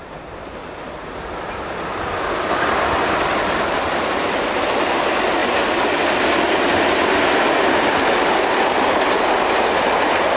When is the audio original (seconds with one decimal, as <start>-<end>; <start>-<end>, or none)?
0.0-10.4